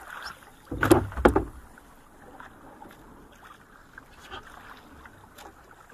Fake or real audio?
real